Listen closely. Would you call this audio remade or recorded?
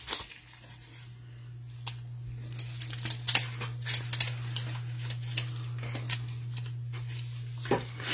recorded